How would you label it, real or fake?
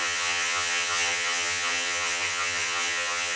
fake